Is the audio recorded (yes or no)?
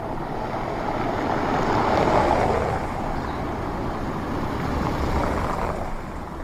yes